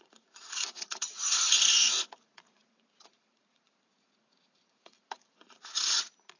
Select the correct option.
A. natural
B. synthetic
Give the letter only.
B